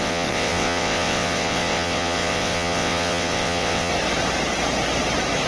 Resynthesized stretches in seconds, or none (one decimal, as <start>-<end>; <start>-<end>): 0.0-3.9